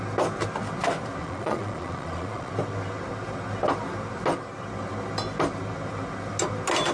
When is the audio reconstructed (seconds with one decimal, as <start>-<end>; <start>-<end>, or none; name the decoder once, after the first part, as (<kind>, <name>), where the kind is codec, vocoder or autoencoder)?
1.2-2.5 (vocoder, Vocos)